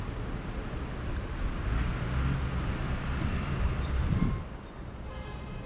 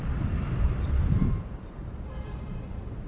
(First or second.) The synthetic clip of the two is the second